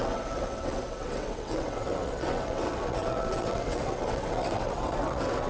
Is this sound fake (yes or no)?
yes